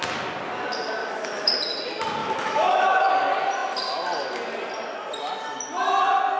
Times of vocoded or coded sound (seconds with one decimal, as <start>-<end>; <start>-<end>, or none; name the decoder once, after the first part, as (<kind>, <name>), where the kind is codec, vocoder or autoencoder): 1.0-1.5 (autoencoder, DAC-VAE); 2.2-3.1